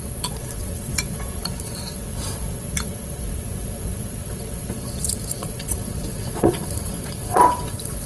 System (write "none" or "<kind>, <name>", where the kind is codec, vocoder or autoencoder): vocoder, Vocos